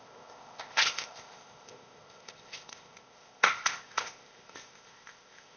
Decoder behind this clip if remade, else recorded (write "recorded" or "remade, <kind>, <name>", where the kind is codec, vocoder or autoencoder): remade, codec, ZipCodec